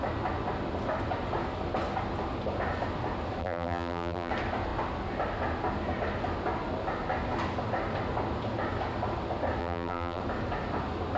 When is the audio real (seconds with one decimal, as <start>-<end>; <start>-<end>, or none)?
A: 0.0-3.4; 4.3-9.6; 10.2-11.2